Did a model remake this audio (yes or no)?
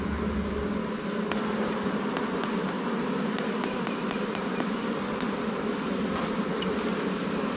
no